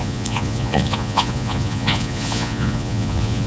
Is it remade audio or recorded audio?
remade